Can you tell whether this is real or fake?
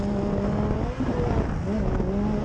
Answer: real